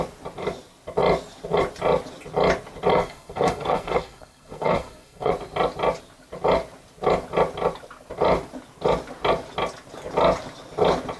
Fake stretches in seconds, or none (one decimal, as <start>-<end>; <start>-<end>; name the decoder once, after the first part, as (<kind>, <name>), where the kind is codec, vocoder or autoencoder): 2.9-5.3 (codec, SNAC)